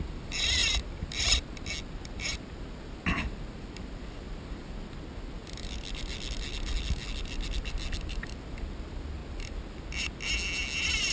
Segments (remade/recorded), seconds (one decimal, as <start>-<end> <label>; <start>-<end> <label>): 0.0-11.1 recorded

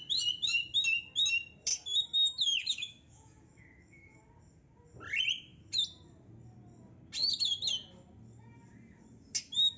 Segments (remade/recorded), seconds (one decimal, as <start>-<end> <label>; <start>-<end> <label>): 0.0-1.7 recorded; 1.7-4.2 remade; 4.2-9.8 recorded